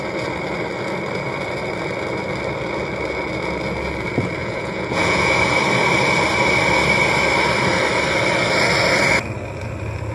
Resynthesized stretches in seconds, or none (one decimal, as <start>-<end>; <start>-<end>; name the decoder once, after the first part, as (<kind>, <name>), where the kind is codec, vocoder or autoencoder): 4.4-5.4 (vocoder, Vocos)